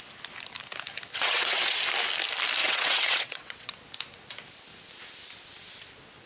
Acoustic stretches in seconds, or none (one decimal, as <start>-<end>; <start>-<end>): 0.0-1.1; 1.8-2.6; 3.7-6.3